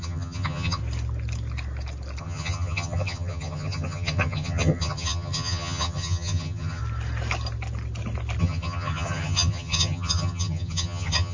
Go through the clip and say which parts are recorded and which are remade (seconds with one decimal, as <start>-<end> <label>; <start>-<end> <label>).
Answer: 0.0-0.8 remade; 0.8-2.2 recorded; 2.2-6.8 remade; 6.8-8.4 recorded; 8.4-11.3 remade